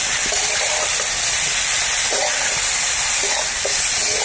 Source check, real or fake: real